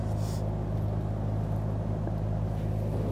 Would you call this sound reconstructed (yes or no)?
yes